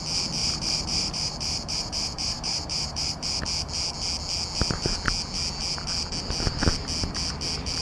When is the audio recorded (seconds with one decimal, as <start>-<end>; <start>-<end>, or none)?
0.0-0.4; 3.4-7.8